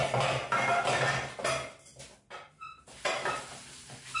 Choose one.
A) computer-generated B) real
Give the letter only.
B